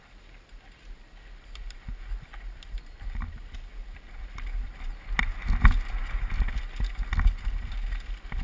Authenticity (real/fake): real